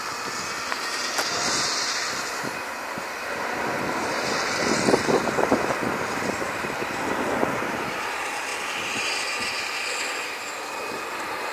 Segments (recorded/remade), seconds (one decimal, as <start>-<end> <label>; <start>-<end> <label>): 0.0-11.5 recorded